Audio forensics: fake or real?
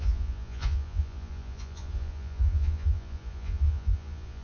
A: fake